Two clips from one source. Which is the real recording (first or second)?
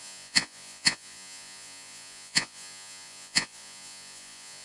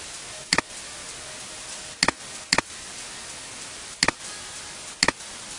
second